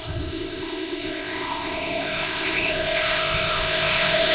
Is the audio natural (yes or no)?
no